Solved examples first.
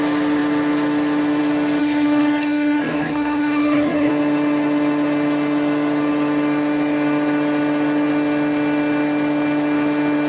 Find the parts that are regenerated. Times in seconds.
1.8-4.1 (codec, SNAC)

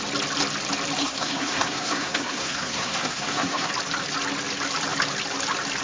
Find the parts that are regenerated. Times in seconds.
1.0-3.7 (codec, SNAC)

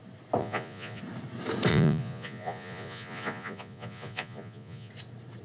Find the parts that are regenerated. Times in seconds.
0.4-1.0 (vocoder, Vocos); 1.7-4.9

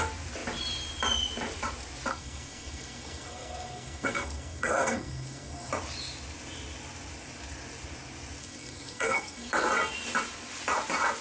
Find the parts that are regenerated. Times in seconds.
2.1-5.7 (codec, SNAC); 8.4-9.5